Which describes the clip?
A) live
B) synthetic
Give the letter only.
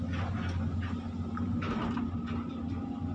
A